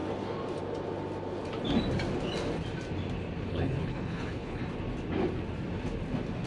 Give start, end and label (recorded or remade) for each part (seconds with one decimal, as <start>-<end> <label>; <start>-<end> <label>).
0.0-3.5 recorded; 3.5-4.6 remade; 4.6-6.5 recorded